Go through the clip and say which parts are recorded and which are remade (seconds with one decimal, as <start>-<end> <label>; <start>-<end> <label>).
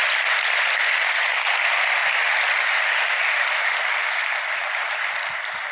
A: 0.0-0.5 recorded; 0.5-2.0 remade; 2.0-3.2 recorded; 3.2-5.7 remade